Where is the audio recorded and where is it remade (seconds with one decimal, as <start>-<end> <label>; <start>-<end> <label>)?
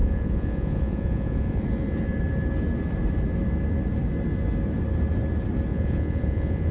0.0-1.6 remade; 1.6-5.7 recorded; 5.7-6.7 remade